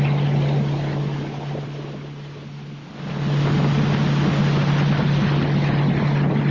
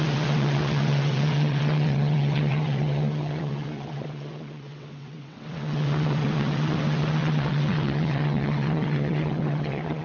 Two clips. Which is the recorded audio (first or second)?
first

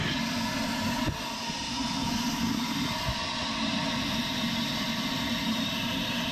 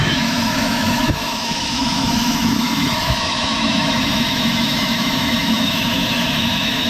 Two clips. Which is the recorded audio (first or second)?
first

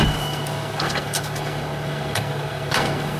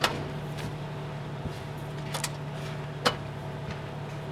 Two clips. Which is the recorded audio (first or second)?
second